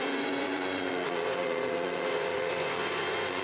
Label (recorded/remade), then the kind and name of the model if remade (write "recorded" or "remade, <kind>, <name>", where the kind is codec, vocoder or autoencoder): remade, vocoder, Vocos